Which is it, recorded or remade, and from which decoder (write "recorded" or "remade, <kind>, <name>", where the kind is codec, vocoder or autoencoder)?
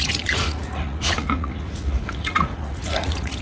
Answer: remade, vocoder, Vocos